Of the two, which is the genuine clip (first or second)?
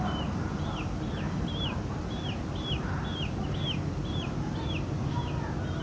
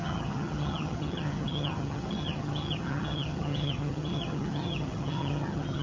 first